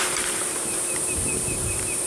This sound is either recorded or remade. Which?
remade